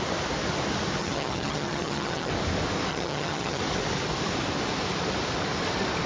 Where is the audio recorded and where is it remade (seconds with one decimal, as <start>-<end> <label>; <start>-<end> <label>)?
0.0-1.0 recorded; 1.0-2.3 remade; 2.3-2.9 recorded; 2.9-3.6 remade; 3.6-6.1 recorded